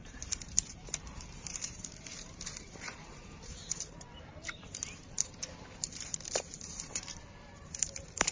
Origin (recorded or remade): remade